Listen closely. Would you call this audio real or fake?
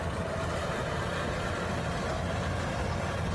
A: real